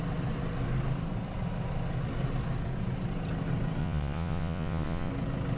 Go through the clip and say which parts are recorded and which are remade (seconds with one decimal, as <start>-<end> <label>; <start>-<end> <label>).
0.0-3.8 recorded; 3.8-5.1 remade; 5.1-5.6 recorded